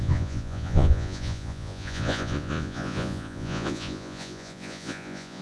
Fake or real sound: fake